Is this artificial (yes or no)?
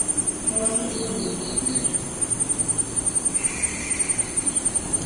no